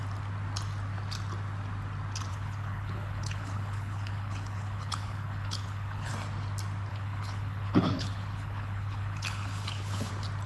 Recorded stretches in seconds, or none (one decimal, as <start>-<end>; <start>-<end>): 0.0-2.3; 6.1-6.9; 10.1-10.5